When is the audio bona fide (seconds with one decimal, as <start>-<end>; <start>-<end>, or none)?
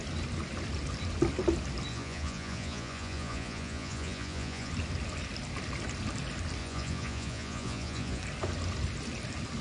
0.0-1.9; 4.7-6.6; 8.2-9.6